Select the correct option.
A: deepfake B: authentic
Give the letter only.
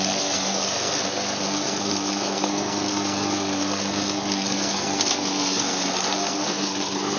A